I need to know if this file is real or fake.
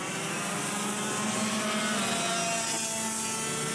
real